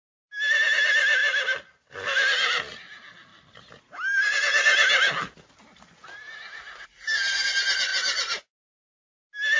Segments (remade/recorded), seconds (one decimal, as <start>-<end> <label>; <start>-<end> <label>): 0.0-9.6 recorded